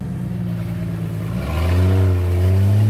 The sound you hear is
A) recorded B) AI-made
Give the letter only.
A